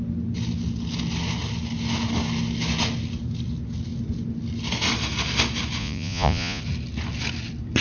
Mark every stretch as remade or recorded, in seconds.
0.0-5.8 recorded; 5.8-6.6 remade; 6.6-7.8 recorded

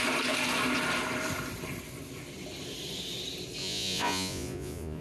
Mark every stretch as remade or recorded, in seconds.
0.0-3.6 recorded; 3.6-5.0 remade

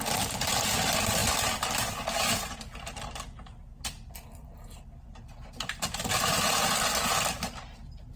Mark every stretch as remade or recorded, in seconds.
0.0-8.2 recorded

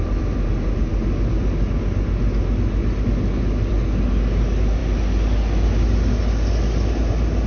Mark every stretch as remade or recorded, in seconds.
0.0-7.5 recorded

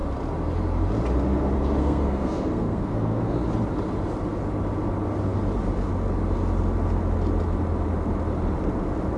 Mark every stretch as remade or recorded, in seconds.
0.0-1.8 recorded; 1.8-3.3 remade; 3.3-9.2 recorded

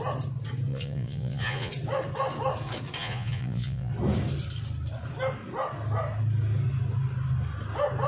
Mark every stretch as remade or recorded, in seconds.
0.0-0.7 recorded; 0.7-1.7 remade; 1.7-3.0 recorded; 3.0-3.9 remade; 3.9-8.1 recorded

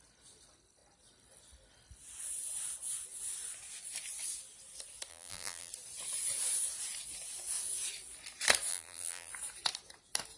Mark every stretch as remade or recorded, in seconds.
0.0-5.1 recorded; 5.1-5.7 remade; 5.7-8.7 recorded; 8.7-9.3 remade; 9.3-10.4 recorded

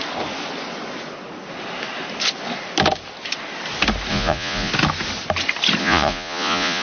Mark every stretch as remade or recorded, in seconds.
0.0-4.1 recorded; 4.1-4.7 remade; 4.7-5.8 recorded; 5.8-6.8 remade